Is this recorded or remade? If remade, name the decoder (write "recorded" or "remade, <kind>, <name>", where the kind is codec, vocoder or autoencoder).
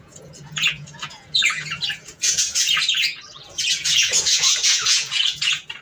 remade, vocoder, Vocos